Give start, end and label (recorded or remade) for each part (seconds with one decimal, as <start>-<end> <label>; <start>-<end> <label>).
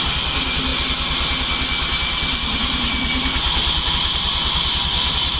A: 0.0-5.4 recorded